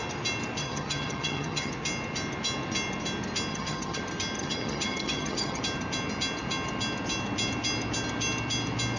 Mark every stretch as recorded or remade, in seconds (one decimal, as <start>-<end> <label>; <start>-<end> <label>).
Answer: 0.0-0.6 recorded; 0.6-1.7 remade; 1.7-3.5 recorded; 3.5-4.0 remade; 4.0-4.4 recorded; 4.4-5.6 remade; 5.6-9.0 recorded